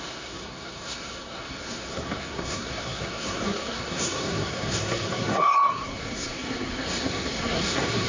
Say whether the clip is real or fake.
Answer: fake